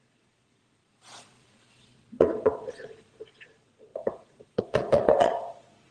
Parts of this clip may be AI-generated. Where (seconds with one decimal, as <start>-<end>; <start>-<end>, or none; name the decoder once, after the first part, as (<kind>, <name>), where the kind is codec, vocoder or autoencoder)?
0.0-5.9 (vocoder, Vocos)